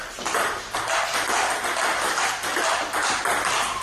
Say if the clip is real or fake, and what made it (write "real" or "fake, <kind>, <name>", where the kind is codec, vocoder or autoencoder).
real